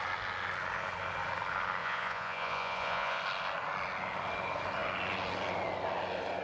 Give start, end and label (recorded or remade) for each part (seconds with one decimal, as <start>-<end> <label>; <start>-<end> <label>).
0.0-1.8 recorded; 1.8-3.2 remade; 3.2-6.4 recorded